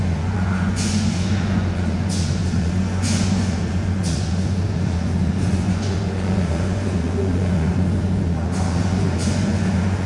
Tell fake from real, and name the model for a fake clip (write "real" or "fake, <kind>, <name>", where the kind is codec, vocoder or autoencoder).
fake, vocoder, Vocos